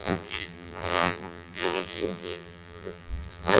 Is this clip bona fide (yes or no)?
no